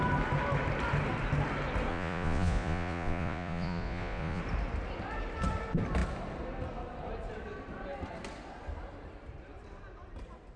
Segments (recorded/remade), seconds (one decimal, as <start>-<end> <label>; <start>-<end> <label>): 0.0-1.9 recorded; 1.9-4.4 remade; 4.4-10.6 recorded